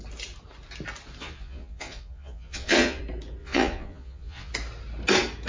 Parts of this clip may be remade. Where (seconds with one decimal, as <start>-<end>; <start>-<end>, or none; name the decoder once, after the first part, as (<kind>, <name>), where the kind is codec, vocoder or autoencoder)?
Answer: 1.2-3.0 (vocoder, Vocos); 3.4-4.5